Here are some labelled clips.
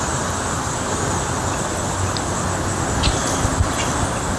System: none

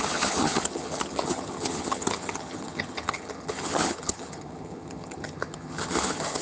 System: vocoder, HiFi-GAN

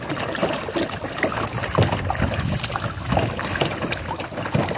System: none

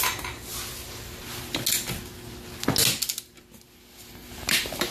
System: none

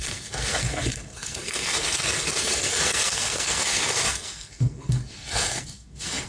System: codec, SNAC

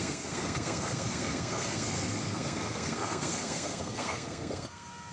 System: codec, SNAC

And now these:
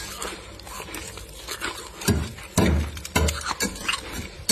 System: none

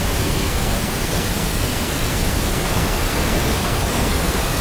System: codec, SNAC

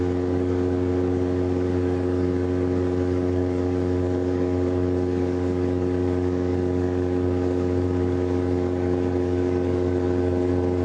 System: codec, DAC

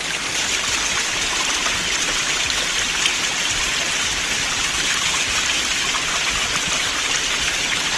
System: none